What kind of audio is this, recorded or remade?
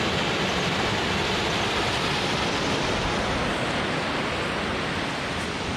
recorded